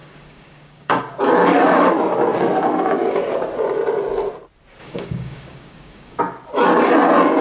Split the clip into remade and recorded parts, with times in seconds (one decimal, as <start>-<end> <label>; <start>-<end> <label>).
0.0-1.0 remade; 1.0-1.4 recorded; 1.4-1.9 remade; 1.9-4.8 recorded; 4.8-6.2 remade; 6.2-7.4 recorded